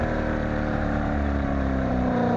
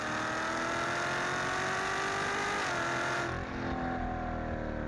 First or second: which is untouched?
second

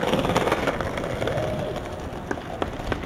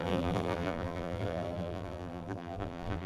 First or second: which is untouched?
first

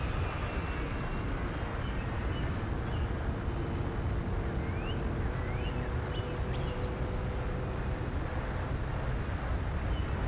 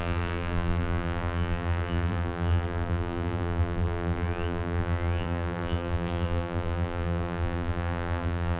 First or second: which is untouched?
first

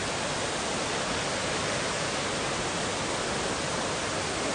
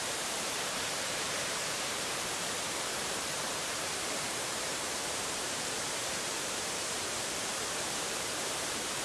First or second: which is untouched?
first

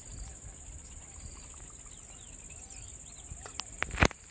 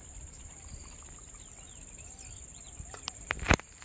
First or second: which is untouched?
first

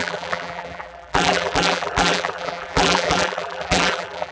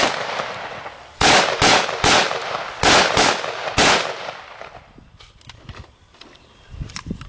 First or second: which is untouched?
second